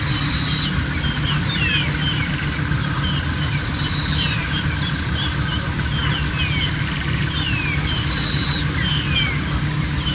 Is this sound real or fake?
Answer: real